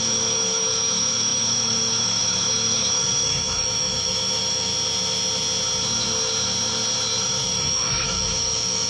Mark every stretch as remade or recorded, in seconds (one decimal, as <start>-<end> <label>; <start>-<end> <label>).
0.0-4.7 remade; 4.7-7.2 recorded; 7.2-8.9 remade